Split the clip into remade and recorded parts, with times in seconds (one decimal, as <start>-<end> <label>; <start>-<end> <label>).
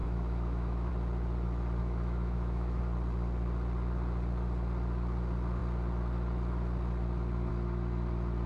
0.0-0.9 remade; 0.9-1.8 recorded; 1.8-2.8 remade; 2.8-8.5 recorded